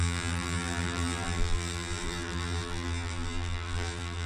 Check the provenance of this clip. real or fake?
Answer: fake